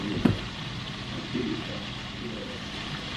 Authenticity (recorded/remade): recorded